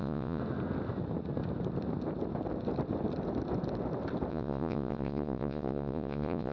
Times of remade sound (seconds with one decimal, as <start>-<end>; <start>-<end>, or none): 0.0-0.4; 4.3-6.5